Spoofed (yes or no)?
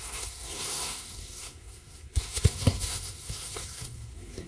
yes